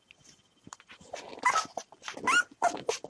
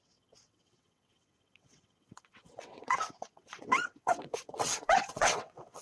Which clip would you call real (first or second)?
first